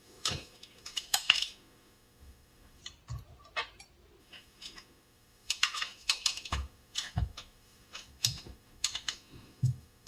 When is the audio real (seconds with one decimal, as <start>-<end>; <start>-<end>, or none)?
2.8-4.2